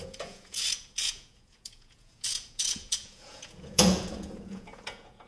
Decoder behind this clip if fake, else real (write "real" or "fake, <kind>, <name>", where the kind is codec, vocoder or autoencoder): fake, vocoder, Vocos